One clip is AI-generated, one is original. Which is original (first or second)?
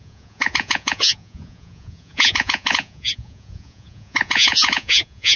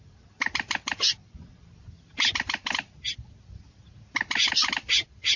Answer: second